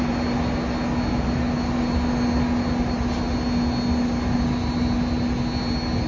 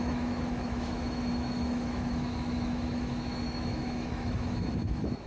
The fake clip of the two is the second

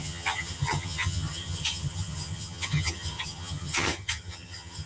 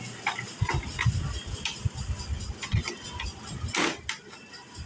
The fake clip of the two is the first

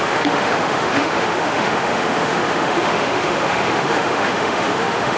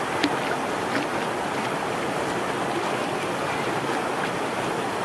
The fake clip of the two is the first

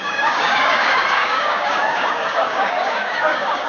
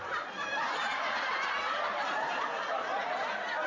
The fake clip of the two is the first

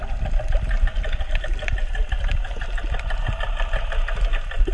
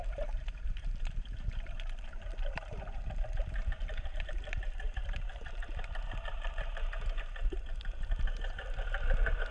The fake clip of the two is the second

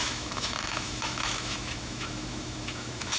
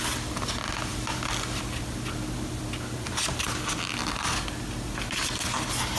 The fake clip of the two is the first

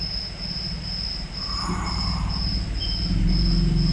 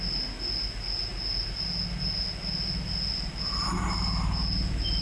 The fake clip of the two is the first